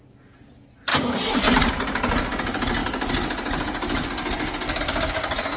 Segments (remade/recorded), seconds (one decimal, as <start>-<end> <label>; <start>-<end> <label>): 0.0-5.6 recorded